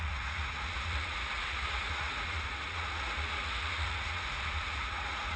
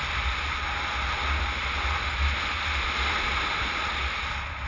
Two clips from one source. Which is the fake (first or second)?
first